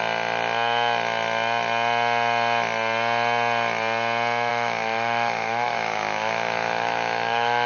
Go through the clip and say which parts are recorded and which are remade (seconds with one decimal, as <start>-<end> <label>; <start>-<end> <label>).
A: 0.0-4.5 recorded; 4.5-7.7 remade